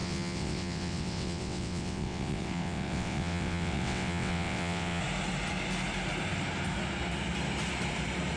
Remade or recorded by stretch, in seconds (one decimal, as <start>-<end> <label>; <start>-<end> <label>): 0.0-5.0 remade; 5.0-8.4 recorded